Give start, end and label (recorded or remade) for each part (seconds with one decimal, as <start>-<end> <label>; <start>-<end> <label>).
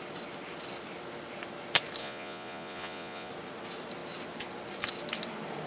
0.0-2.0 recorded; 2.0-3.3 remade; 3.3-5.7 recorded